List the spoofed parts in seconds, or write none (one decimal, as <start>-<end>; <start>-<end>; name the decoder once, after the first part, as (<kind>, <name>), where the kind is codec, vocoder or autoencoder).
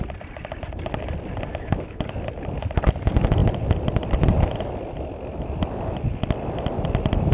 1.5-2.0 (autoencoder, DAC-VAE)